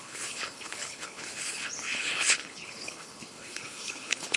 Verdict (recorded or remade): remade